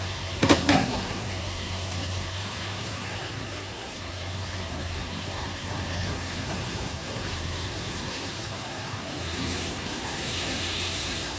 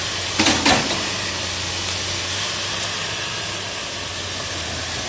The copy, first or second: first